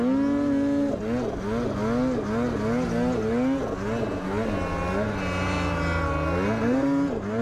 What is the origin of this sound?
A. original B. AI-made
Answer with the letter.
A